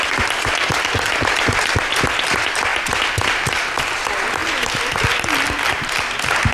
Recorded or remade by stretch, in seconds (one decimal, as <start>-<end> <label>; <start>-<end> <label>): 0.0-2.7 remade; 2.7-3.3 recorded; 3.3-4.4 remade; 4.4-5.5 recorded; 5.5-6.5 remade